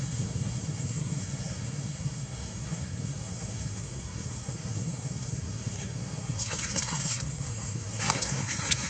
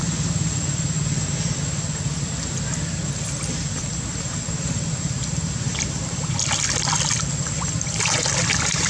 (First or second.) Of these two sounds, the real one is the second